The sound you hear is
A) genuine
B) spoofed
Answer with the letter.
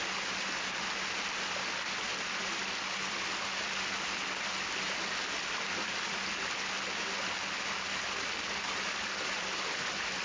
A